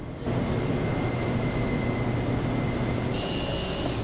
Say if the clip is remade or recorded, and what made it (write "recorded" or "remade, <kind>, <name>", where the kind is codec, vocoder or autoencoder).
recorded